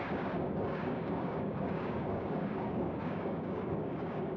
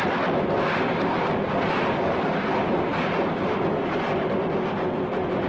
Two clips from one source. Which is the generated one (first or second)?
first